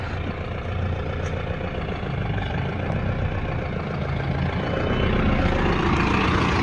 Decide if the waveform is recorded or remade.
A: recorded